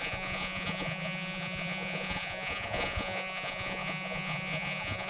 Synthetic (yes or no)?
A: yes